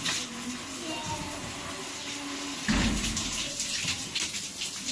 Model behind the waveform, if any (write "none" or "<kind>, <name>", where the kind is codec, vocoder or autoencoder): none